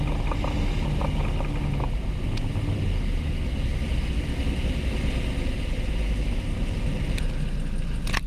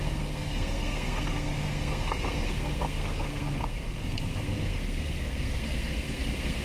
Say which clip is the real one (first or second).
first